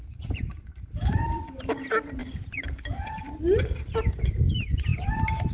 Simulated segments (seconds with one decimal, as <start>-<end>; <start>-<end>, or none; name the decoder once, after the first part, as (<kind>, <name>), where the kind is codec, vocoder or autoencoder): 0.0-1.4 (vocoder, BigVGAN v2); 2.2-4.3